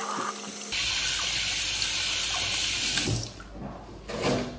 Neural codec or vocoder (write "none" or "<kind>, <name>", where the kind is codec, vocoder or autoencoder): none